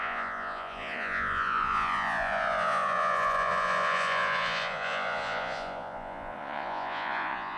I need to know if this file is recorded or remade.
remade